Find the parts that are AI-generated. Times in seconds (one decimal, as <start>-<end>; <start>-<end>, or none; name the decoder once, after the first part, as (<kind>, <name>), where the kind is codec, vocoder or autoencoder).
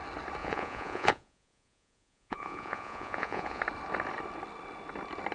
0.4-3.6 (vocoder, Vocos)